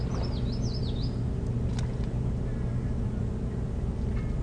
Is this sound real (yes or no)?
yes